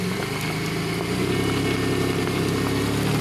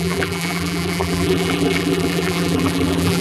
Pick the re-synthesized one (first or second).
second